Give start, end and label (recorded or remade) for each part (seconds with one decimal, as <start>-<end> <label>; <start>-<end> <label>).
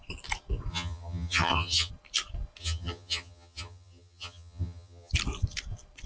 0.0-0.7 recorded; 0.7-1.9 remade; 1.9-2.6 recorded; 2.6-5.1 remade; 5.1-6.1 recorded